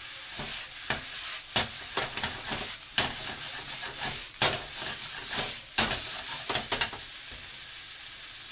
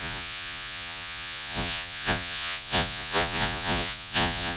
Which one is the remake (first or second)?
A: second